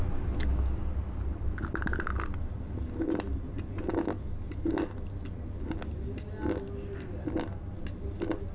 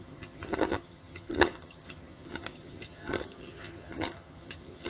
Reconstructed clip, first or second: second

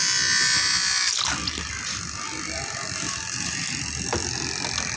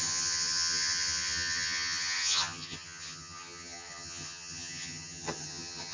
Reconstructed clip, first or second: second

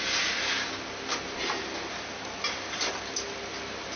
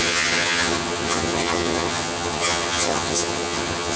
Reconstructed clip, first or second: second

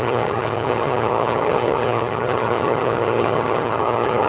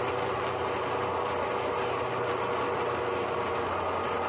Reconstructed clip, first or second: first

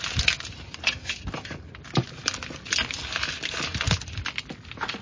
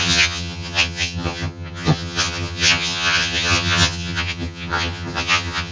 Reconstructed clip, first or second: second